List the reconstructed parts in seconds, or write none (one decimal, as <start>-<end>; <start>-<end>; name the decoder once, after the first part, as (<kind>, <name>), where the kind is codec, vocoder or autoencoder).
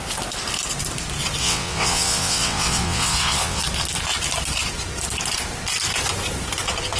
1.4-3.6 (vocoder, WaveNeXt)